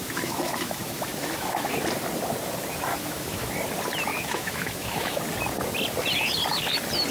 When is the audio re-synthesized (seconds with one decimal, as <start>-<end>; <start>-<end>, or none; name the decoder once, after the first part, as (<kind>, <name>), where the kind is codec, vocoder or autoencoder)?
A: 0.0-1.8 (autoencoder, DAC-VAE); 2.9-3.5; 4.1-5.2